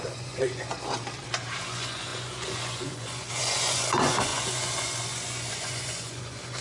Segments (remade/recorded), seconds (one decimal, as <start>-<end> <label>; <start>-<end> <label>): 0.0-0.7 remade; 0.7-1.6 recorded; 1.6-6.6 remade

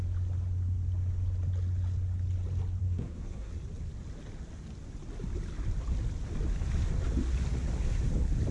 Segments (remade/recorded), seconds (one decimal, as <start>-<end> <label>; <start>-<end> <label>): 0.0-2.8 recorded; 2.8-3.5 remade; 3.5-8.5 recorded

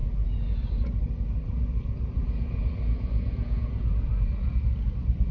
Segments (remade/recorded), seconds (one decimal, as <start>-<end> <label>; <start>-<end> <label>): 0.0-1.0 remade; 1.0-1.5 recorded; 1.5-4.7 remade; 4.7-5.3 recorded

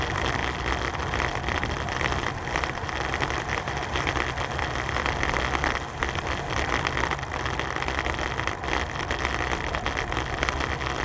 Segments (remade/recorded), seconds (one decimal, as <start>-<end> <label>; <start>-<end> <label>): 0.0-0.4 recorded; 0.4-5.0 remade; 5.0-11.0 recorded

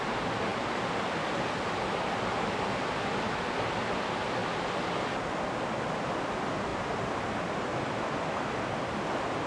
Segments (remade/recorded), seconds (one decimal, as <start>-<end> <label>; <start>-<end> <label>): 0.0-9.5 recorded

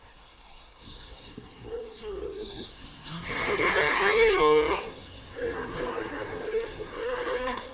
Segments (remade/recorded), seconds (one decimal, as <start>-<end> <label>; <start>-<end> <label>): 0.0-7.7 remade

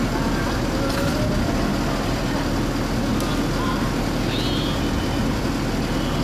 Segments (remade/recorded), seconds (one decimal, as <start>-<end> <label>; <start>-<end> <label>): 0.0-6.2 recorded